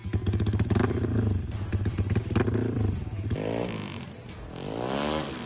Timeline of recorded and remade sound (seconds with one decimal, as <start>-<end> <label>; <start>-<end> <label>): 0.0-2.1 remade; 2.1-2.6 recorded; 2.6-4.1 remade; 4.1-5.5 recorded